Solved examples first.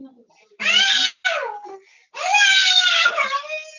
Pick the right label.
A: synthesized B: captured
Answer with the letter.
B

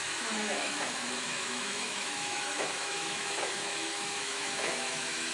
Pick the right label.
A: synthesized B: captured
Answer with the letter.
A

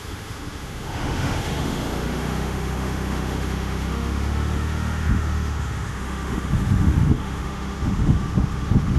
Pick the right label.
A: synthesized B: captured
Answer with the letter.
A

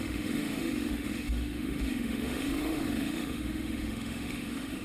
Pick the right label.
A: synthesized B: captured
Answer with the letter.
A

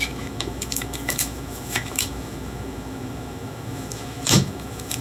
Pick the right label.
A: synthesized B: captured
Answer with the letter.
A